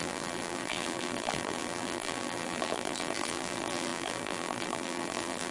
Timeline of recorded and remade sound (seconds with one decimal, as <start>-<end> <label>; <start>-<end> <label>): 0.0-5.5 remade